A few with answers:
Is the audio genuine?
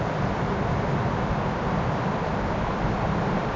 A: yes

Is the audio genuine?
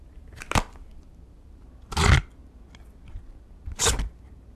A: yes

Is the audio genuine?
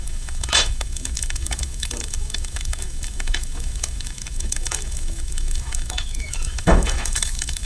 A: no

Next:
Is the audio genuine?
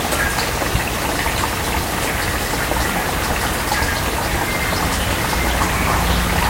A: yes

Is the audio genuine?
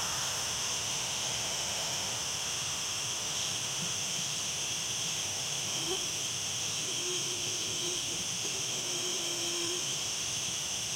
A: no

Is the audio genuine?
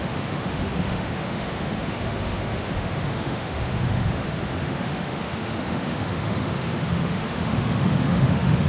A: no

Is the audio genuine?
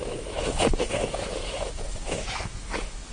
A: no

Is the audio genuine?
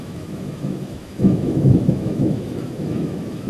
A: no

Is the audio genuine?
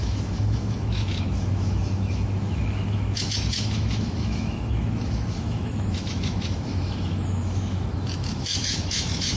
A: no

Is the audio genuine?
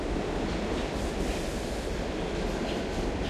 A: yes